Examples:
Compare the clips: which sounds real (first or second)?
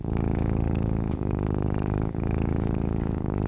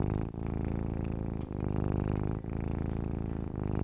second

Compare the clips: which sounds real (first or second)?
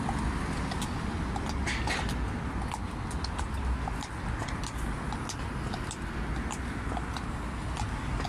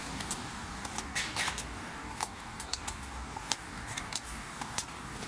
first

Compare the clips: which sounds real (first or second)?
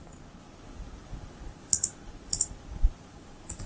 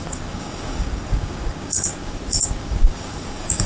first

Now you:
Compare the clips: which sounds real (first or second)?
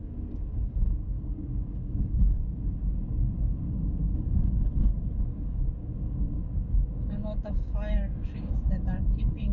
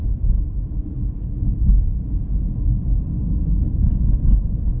second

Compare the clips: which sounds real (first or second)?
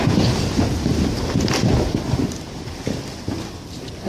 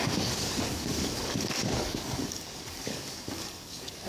first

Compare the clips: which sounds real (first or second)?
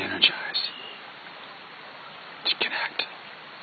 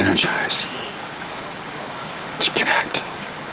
first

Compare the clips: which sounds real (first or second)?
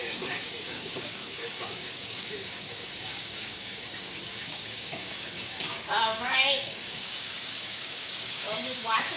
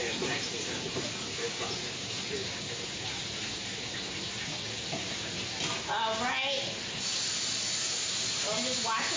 second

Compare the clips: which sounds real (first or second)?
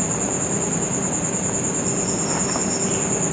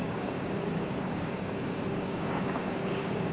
first